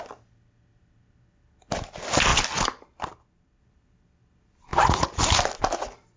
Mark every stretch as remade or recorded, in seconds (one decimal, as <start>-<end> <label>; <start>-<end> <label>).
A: 0.0-4.7 recorded; 4.7-5.2 remade; 5.2-6.2 recorded